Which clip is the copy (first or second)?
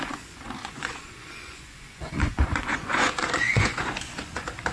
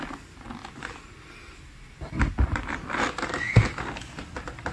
first